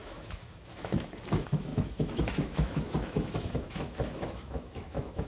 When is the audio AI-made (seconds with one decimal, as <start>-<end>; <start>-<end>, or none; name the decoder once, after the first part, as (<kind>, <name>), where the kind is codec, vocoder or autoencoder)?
0.0-5.3 (autoencoder, DAC-VAE)